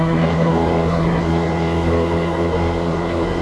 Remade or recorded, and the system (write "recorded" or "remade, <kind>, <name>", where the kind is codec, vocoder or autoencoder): remade, codec, SNAC